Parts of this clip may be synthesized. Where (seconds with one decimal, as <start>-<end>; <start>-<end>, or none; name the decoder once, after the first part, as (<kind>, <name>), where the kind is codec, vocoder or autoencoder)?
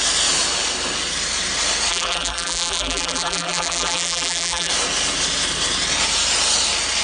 1.9-4.7 (vocoder, BigVGAN v2)